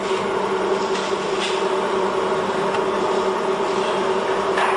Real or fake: fake